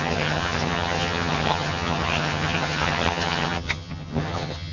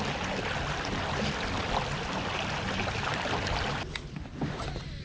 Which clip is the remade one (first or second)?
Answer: first